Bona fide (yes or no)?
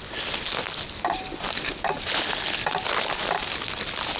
yes